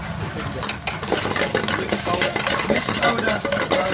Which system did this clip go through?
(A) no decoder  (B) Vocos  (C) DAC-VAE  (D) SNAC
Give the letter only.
A